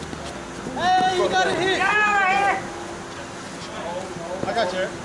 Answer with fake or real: real